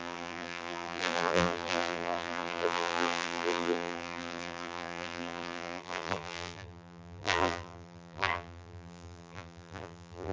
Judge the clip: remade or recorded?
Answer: remade